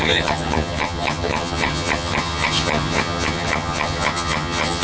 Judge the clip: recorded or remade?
remade